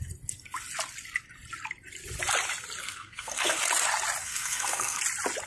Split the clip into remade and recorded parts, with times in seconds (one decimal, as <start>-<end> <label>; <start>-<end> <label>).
0.0-2.8 recorded; 2.8-3.6 remade; 3.6-4.2 recorded; 4.2-5.0 remade; 5.0-5.5 recorded